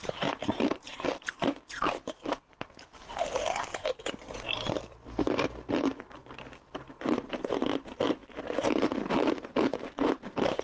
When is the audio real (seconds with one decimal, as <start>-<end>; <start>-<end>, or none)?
none